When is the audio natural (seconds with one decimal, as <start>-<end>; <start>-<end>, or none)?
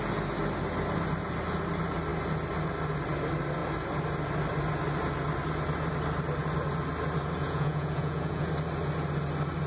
0.0-7.4; 8.5-9.7